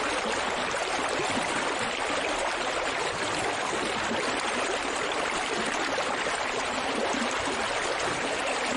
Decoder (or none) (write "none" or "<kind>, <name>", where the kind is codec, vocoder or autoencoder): vocoder, BigVGAN v2